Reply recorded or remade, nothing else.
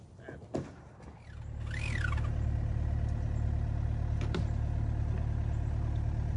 recorded